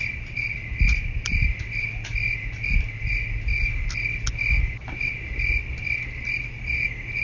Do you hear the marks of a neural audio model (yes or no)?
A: no